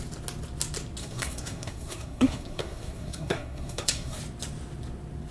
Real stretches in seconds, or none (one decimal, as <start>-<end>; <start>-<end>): 0.0-1.0; 4.2-5.3